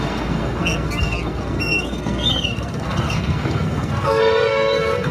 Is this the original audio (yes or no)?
no